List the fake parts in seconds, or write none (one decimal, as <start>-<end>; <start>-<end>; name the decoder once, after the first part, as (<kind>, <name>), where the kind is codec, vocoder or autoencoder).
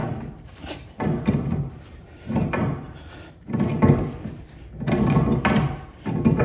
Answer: 0.0-3.7 (vocoder, BigVGAN v2)